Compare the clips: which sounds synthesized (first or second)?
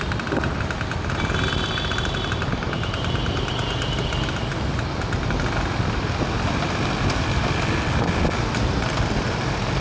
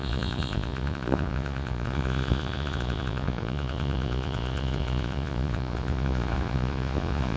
second